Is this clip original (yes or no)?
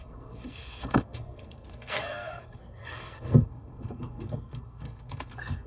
no